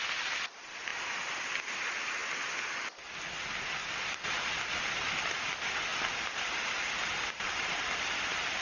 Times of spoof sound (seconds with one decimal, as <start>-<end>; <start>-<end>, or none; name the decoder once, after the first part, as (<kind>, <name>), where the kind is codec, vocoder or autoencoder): none